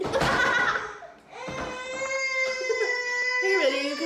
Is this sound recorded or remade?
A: recorded